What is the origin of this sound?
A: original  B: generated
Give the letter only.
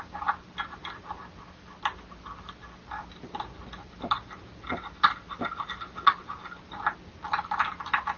A